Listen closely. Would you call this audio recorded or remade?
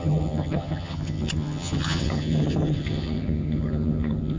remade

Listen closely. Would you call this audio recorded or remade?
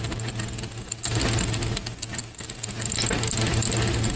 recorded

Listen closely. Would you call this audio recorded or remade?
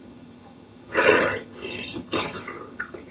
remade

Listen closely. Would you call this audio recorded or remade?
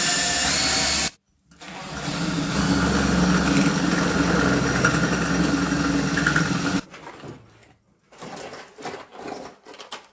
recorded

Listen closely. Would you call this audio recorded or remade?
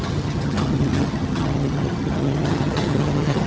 remade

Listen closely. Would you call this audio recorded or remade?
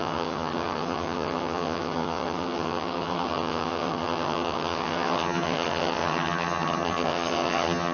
remade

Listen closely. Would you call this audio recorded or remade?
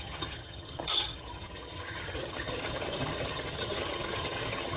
remade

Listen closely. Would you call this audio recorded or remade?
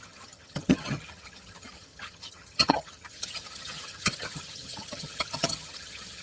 remade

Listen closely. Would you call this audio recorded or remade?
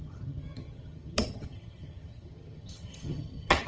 remade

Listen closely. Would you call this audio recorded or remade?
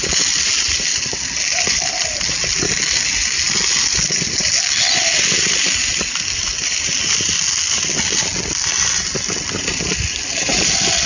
recorded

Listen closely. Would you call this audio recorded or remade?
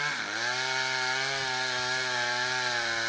recorded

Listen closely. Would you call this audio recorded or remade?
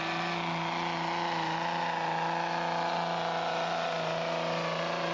recorded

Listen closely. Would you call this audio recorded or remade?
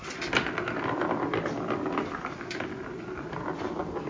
recorded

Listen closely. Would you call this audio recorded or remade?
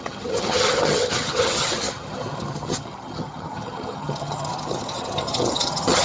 remade